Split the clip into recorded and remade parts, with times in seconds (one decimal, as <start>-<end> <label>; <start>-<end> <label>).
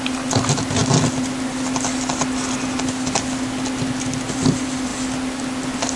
0.0-6.0 recorded